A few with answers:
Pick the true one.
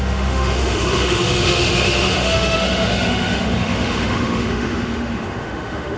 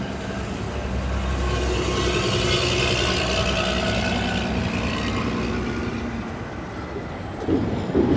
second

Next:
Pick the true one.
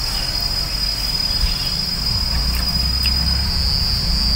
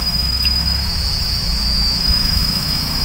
first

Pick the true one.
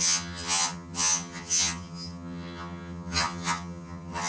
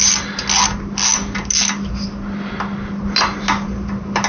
second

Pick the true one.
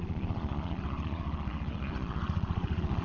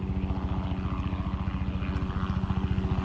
second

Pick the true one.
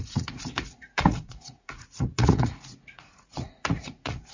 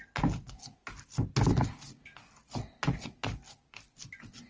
second